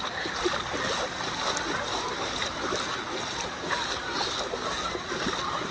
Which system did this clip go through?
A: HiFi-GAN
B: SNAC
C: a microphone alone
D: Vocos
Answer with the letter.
C